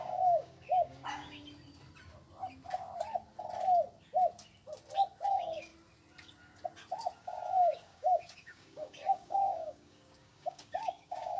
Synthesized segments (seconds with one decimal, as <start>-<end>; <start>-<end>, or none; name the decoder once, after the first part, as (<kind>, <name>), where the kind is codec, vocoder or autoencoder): 0.0-1.4 (codec, DAC); 5.3-5.7; 7.2-11.4